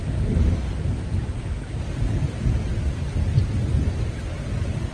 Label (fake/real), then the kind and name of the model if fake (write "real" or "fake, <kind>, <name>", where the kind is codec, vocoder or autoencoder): real